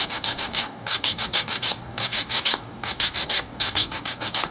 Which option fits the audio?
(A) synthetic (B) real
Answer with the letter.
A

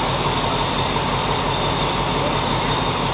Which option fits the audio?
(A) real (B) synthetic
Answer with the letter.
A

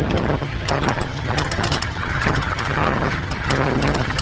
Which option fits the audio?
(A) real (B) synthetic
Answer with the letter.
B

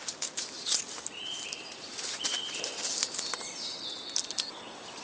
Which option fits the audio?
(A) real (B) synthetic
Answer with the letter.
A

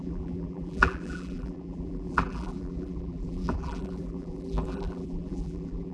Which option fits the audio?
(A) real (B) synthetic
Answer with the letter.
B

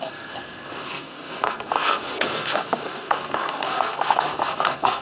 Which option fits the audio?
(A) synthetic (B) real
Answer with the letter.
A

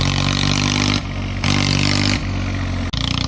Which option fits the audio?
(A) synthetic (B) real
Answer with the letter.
B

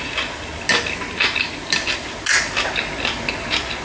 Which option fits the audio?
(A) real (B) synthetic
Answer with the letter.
A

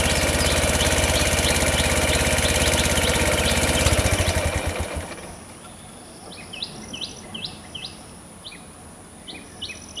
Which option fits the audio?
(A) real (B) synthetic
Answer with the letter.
A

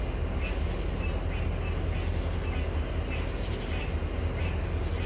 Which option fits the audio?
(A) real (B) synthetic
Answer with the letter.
A